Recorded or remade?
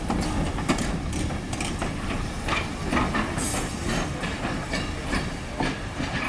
recorded